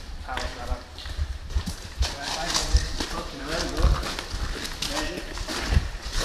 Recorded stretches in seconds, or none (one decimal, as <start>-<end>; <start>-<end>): 0.0-0.5; 2.1-2.6; 3.4-6.2